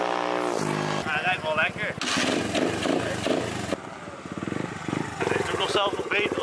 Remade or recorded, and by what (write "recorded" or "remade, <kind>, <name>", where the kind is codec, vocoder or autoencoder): recorded